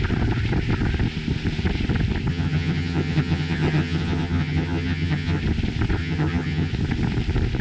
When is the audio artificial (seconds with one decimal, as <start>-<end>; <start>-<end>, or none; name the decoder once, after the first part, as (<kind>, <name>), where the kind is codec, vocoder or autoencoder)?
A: 2.3-5.4 (vocoder, HiFi-GAN); 6.0-6.7